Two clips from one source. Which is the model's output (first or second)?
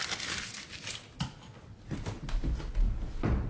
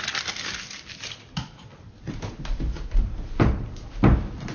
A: second